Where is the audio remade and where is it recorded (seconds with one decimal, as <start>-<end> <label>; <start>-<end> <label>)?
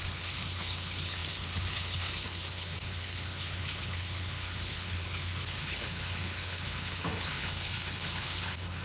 0.0-8.8 remade